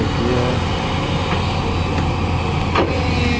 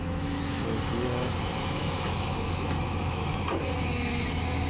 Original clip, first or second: first